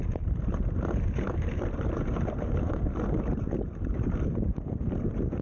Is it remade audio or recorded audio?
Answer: remade